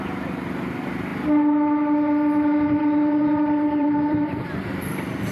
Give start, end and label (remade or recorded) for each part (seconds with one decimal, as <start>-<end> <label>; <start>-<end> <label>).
0.0-3.8 recorded; 3.8-5.3 remade